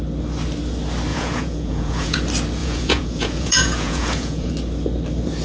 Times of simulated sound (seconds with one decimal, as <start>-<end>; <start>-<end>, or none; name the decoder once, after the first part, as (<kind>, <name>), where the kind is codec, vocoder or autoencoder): 1.1-2.2 (vocoder, Vocos); 2.6-4.5